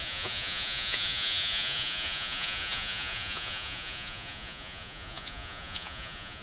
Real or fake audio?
fake